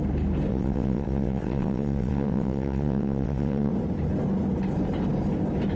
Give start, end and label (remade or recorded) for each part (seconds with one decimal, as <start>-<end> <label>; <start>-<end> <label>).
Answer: 0.0-0.5 recorded; 0.5-3.7 remade; 3.7-5.8 recorded